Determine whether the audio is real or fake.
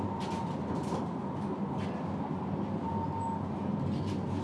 real